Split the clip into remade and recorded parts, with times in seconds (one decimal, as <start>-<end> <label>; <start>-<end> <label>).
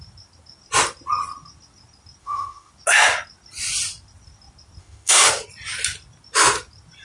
0.0-2.2 recorded; 2.2-2.7 remade; 2.7-4.8 recorded; 4.8-5.3 remade; 5.3-7.0 recorded